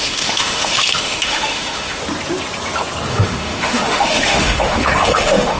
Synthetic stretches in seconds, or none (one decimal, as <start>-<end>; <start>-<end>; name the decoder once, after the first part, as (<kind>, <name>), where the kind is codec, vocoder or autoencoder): 0.0-2.0 (autoencoder, DAC-VAE); 3.1-5.6